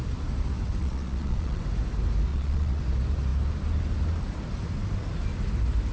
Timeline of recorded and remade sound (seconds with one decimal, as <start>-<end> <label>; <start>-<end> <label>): 0.0-0.8 recorded; 0.8-1.6 remade; 1.6-2.3 recorded; 2.3-2.8 remade; 2.8-5.9 recorded